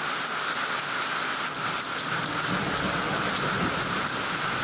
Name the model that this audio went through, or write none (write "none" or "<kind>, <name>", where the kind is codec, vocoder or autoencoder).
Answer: vocoder, BigVGAN v2